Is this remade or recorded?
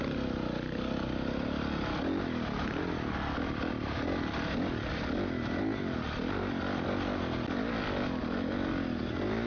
recorded